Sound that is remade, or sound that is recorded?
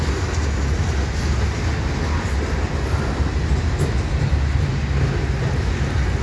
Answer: recorded